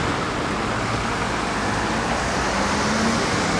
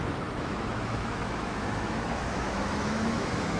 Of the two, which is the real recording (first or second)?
first